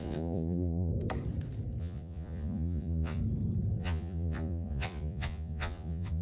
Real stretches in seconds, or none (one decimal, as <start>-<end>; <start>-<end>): 0.9-1.8; 3.2-3.8